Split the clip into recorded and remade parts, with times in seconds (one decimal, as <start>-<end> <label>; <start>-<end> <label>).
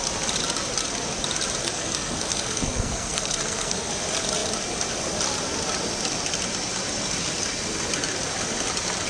0.0-1.6 recorded; 1.6-3.9 remade; 3.9-9.1 recorded